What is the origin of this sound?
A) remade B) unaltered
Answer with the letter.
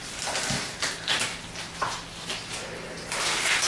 B